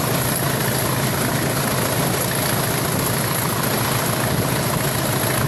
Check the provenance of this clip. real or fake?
real